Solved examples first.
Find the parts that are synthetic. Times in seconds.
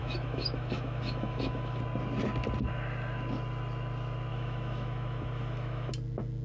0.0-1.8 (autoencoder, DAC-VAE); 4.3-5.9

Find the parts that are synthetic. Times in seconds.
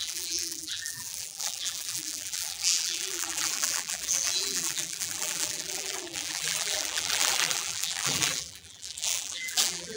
0.0-10.0 (vocoder, BigVGAN v2)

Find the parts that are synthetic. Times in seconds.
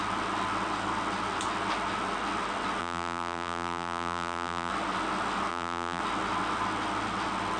2.8-4.7 (vocoder, BigVGAN v2); 5.5-6.0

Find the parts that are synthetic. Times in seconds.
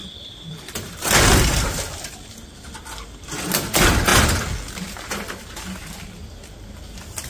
0.0-1.8 (vocoder, BigVGAN v2)